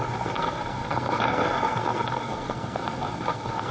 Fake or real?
fake